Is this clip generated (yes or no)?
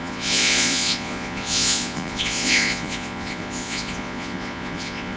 yes